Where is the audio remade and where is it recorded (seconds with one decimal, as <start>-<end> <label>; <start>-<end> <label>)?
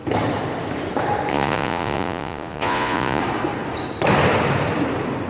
0.0-1.3 recorded; 1.3-3.2 remade; 3.2-5.3 recorded